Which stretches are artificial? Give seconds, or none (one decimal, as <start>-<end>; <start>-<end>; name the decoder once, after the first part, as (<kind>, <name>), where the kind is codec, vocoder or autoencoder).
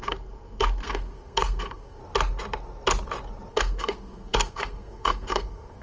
0.0-2.0 (codec, SNAC); 3.5-5.8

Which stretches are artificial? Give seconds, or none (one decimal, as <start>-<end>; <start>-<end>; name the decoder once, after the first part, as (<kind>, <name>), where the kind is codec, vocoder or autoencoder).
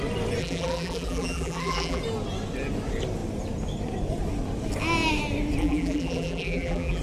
0.4-2.0 (vocoder, BigVGAN v2); 5.6-7.0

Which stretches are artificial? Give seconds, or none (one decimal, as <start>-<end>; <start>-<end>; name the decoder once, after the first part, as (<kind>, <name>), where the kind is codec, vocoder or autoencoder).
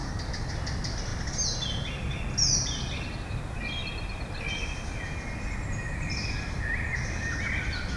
0.0-0.5 (codec, DAC)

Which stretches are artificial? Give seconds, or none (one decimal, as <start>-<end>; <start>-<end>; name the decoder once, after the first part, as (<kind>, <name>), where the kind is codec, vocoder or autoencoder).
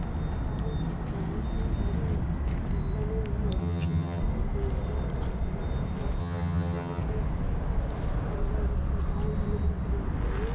3.6-4.2 (vocoder, HiFi-GAN); 6.2-7.0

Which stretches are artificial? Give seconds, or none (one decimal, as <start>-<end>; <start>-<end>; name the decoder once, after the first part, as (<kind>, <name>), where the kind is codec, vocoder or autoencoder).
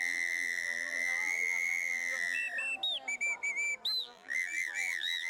0.0-2.4 (vocoder, BigVGAN v2); 4.0-5.3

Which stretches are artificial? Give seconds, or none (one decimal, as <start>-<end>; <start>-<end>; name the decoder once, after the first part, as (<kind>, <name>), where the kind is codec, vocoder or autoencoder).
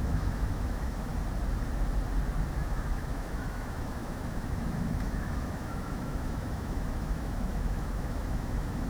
0.0-1.1 (autoencoder, DAC-VAE); 2.6-8.9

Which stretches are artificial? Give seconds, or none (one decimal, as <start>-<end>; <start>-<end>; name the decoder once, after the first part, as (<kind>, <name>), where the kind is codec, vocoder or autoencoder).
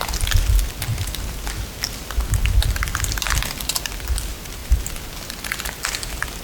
none